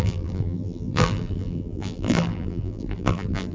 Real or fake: fake